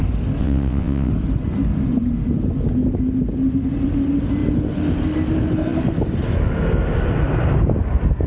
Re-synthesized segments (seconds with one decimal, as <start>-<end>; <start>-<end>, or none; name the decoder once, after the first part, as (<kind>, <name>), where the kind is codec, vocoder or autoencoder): 0.4-1.1 (vocoder, WaveNeXt)